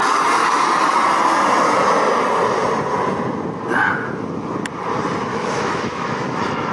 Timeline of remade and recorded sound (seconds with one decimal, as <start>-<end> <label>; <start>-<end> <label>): 0.0-5.3 recorded; 5.3-6.7 remade